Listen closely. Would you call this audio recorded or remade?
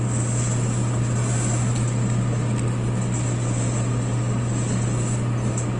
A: recorded